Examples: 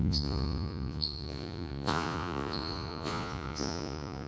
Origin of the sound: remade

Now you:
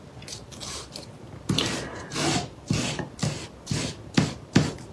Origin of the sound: recorded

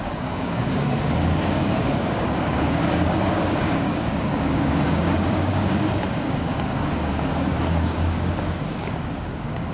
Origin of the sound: remade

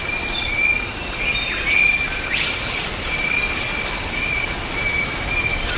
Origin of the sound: remade